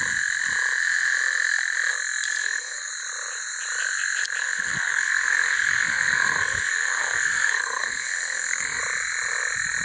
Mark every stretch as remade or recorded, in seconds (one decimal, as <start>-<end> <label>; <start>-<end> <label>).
0.0-2.4 recorded; 2.4-2.9 remade; 2.9-4.4 recorded; 4.4-8.8 remade; 8.8-9.8 recorded